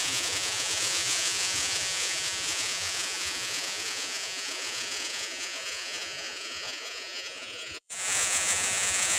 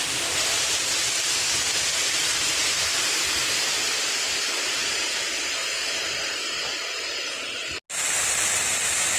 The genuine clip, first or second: second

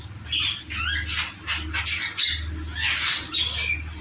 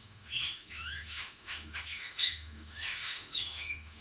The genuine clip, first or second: first